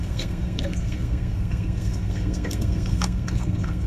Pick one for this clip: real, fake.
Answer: fake